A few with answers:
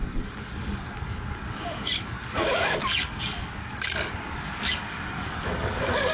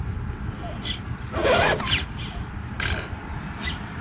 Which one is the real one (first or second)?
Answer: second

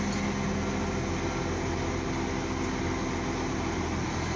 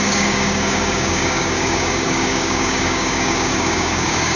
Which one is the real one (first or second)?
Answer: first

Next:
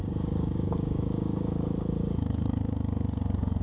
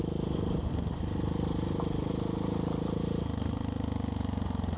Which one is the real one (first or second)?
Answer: second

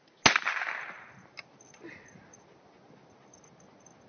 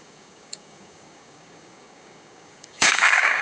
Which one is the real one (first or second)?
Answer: first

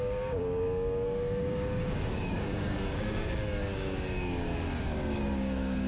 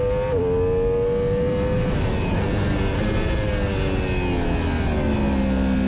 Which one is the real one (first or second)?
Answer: second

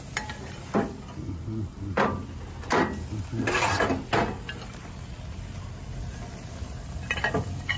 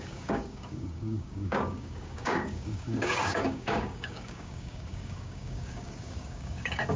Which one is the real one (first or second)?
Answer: first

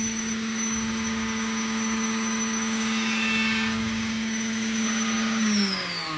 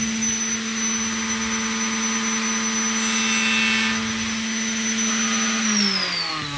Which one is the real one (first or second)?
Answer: second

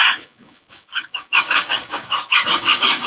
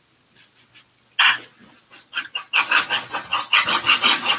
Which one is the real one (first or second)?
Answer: second